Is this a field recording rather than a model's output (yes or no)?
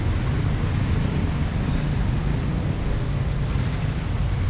yes